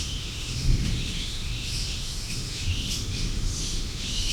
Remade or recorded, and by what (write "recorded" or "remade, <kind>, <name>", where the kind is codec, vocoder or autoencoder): remade, autoencoder, DAC-VAE